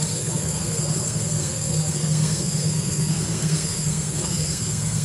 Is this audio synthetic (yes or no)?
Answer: yes